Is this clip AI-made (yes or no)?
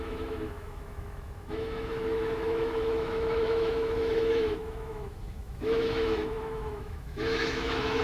yes